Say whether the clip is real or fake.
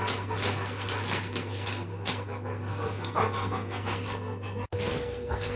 fake